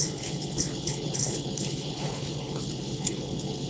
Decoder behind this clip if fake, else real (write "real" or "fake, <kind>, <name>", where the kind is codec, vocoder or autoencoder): fake, codec, HILCodec